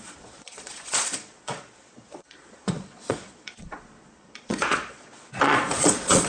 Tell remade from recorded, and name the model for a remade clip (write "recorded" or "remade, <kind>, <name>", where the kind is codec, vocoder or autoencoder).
remade, vocoder, Vocos